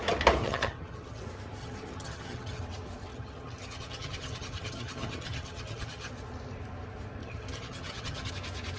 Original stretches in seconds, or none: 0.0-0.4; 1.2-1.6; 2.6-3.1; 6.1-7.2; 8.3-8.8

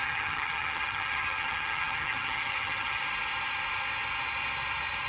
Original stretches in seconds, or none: 3.0-5.1

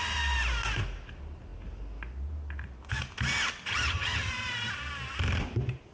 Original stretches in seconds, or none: 0.0-3.7; 4.3-5.9

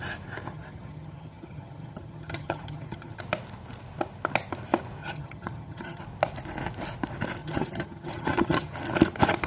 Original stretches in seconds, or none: 0.0-0.5; 3.2-5.0; 6.0-7.4; 8.7-9.5

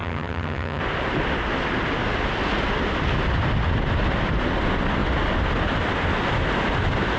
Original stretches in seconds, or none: 0.8-7.2

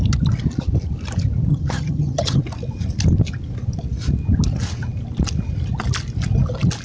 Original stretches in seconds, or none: 0.0-1.5; 2.4-6.8